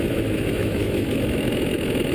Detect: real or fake fake